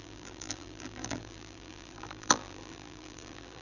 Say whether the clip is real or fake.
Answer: fake